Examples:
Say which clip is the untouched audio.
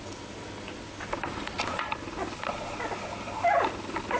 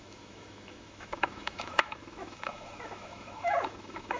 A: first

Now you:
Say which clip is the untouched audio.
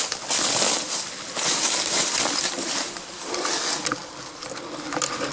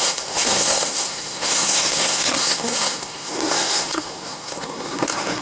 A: first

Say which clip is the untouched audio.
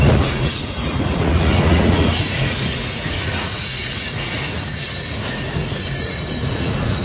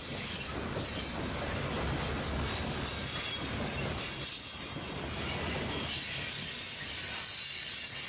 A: second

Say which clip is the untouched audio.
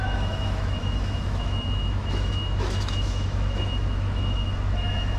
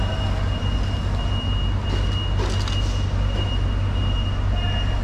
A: second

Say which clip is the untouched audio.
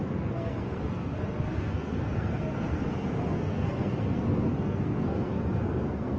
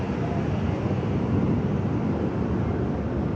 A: second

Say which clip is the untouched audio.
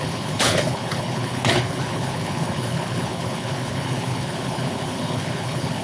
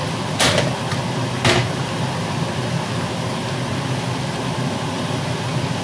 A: second